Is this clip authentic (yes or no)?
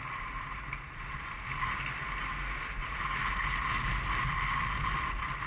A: yes